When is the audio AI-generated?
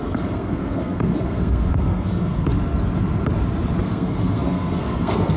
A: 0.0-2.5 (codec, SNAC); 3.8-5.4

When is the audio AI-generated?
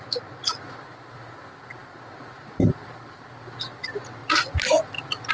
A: none